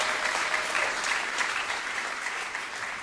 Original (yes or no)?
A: no